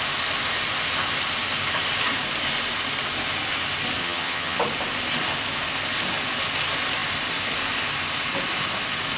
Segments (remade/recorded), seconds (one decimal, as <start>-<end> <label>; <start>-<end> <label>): 0.0-4.0 recorded; 4.0-4.6 remade; 4.6-9.2 recorded